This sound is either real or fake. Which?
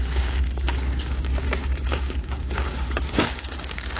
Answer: fake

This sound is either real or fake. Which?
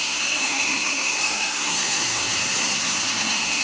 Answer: fake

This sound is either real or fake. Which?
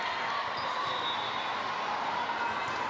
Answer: real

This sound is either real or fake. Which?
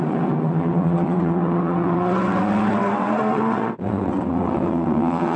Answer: fake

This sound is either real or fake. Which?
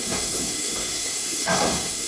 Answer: fake